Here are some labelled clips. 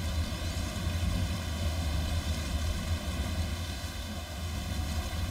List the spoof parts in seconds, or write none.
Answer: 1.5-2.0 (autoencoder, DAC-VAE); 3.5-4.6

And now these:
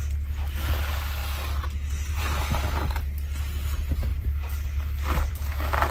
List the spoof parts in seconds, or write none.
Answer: none

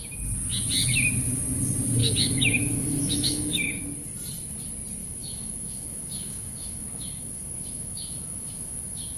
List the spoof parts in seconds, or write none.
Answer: 2.0-3.8 (autoencoder, DAC-VAE); 5.0-9.2

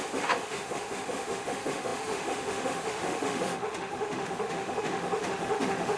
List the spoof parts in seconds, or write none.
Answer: 0.0-6.0 (autoencoder, DAC-VAE)

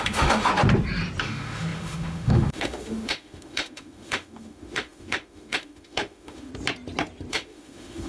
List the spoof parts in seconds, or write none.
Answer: 0.0-0.5 (autoencoder, DAC-VAE); 1.2-6.5; 7.3-8.1